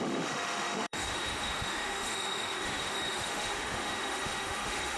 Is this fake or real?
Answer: fake